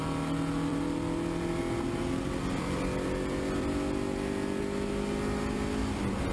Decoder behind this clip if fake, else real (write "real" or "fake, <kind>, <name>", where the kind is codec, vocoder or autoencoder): real